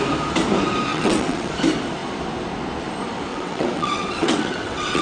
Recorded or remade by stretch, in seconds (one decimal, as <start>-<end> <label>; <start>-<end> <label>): 0.0-0.9 recorded; 0.9-1.5 remade; 1.5-3.3 recorded; 3.3-5.0 remade